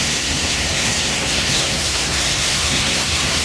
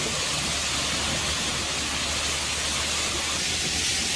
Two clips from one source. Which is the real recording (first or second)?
second